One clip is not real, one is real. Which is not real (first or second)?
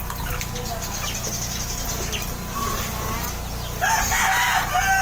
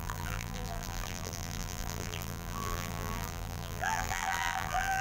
second